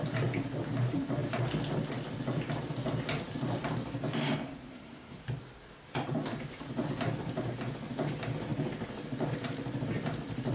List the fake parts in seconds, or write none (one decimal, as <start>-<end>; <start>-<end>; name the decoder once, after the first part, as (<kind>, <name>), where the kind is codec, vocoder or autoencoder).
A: 4.7-5.2 (codec, SNAC)